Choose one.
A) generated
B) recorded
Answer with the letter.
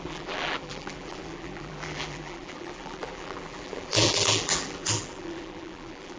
A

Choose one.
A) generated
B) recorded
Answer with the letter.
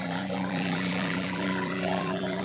A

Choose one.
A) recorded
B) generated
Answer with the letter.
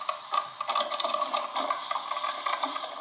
A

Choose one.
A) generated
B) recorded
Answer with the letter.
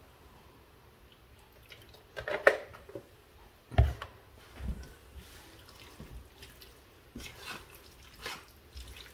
B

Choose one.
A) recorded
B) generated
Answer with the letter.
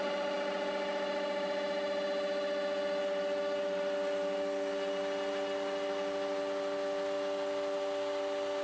A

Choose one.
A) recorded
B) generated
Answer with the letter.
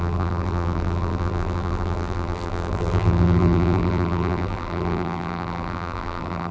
B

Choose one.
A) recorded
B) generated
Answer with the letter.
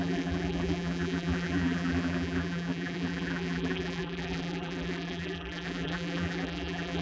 B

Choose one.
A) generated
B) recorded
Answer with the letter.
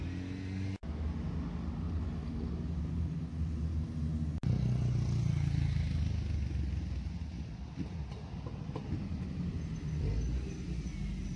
B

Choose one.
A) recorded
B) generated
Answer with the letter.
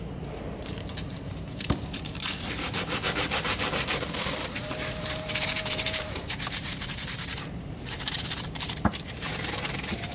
B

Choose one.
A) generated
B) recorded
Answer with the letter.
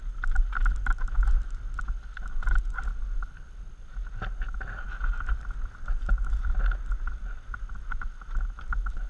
B